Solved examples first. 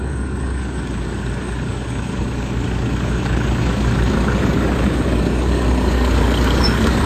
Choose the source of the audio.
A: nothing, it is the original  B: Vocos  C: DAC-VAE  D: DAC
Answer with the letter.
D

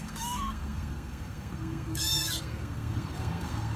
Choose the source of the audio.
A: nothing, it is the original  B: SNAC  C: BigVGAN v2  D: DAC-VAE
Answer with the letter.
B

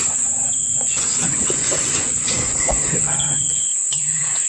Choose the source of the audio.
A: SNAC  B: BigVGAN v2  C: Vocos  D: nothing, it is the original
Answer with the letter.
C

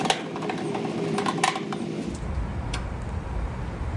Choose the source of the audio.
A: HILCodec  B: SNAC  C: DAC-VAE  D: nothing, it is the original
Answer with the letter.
D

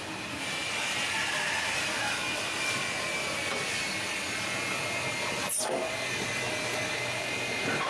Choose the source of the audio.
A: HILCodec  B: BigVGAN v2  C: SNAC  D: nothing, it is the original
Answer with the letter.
D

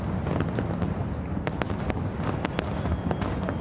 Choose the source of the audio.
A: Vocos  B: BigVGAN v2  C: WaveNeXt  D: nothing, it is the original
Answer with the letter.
D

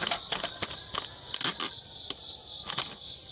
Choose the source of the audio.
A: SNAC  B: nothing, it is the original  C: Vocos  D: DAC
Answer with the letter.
B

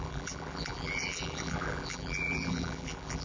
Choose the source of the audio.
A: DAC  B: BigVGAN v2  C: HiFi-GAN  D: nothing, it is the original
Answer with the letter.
B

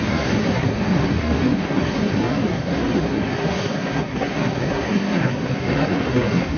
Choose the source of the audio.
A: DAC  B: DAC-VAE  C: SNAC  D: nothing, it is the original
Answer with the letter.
C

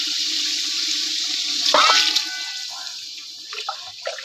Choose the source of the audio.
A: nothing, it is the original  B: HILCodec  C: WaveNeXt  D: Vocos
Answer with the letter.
A